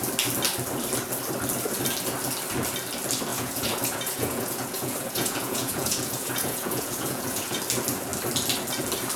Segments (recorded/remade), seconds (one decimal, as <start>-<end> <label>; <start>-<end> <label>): 0.0-3.3 recorded; 3.3-7.6 remade; 7.6-9.2 recorded